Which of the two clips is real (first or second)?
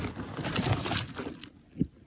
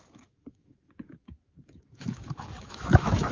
first